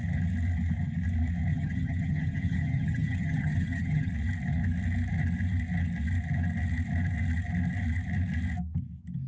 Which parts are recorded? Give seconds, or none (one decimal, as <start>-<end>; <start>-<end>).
0.0-1.5; 4.1-9.3